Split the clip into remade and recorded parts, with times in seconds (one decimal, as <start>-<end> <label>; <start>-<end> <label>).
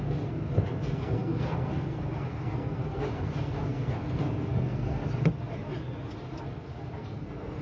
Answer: 0.0-5.0 remade; 5.0-6.4 recorded; 6.4-7.6 remade